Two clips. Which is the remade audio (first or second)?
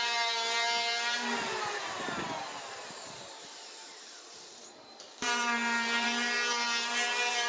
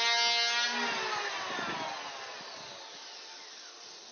first